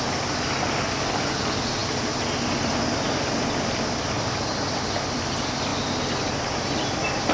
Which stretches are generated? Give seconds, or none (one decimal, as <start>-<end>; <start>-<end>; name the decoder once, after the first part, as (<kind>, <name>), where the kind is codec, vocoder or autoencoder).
none